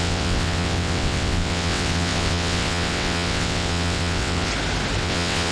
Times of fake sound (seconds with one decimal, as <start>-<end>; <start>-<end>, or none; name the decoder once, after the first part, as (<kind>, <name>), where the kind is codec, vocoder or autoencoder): 0.0-4.5 (vocoder, WaveNeXt); 5.0-5.5